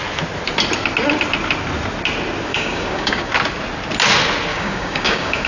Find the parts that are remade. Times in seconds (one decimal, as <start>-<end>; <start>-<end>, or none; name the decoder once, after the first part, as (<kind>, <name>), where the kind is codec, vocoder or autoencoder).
2.5-3.3 (codec, DAC); 4.5-5.5